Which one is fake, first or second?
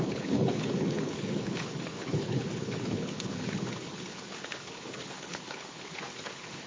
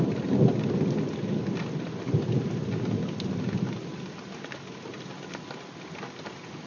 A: first